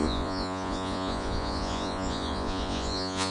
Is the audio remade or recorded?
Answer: remade